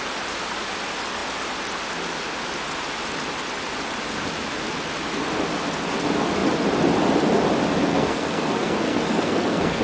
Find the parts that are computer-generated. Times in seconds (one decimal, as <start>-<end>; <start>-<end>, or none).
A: 7.9-9.8

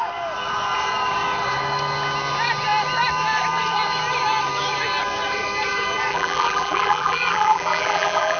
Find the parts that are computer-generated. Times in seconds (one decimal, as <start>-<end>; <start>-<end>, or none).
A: 6.1-8.4

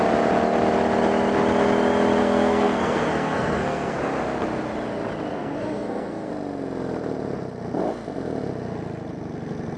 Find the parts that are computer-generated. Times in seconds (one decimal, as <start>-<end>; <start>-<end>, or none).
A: 2.2-4.0; 5.3-6.3

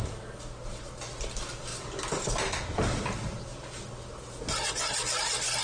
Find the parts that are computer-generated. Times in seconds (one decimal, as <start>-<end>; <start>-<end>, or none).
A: none

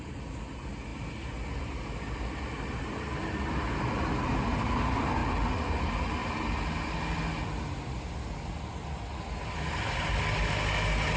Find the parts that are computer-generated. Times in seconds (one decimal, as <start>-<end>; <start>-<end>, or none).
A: none

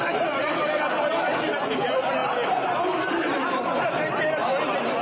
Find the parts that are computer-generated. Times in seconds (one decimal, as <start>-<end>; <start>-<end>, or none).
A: none

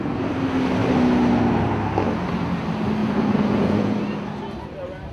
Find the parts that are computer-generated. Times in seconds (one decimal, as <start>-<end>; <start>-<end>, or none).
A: 3.0-4.0

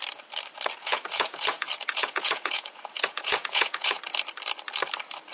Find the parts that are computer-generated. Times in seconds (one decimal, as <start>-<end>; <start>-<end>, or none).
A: 0.8-4.0